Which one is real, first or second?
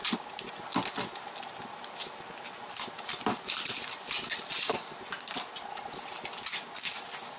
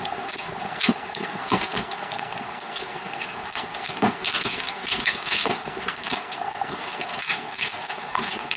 first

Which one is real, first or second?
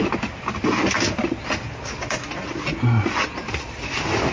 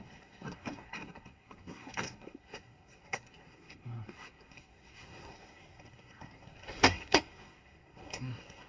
first